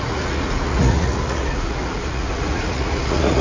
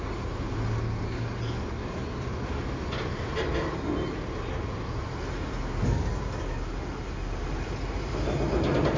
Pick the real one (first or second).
second